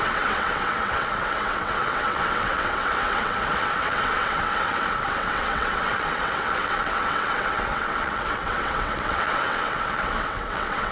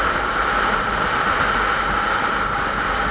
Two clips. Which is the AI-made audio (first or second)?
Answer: first